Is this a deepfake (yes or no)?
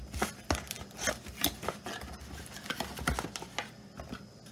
no